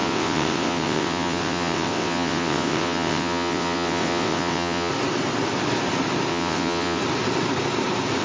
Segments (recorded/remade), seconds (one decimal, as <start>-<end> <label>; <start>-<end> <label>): 0.0-4.9 remade; 4.9-6.3 recorded; 6.3-7.0 remade; 7.0-8.2 recorded